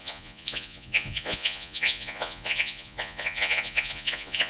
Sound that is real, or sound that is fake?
fake